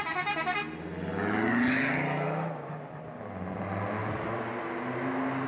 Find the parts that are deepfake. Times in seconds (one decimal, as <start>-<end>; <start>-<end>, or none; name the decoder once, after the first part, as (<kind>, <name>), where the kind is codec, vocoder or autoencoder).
4.0-4.6 (vocoder, BigVGAN v2)